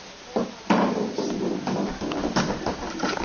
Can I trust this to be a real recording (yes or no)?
yes